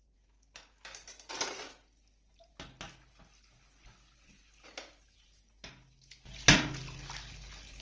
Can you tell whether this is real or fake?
real